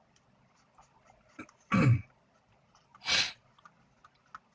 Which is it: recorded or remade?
recorded